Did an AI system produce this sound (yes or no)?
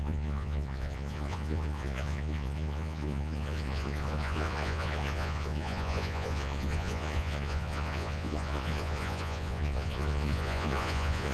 yes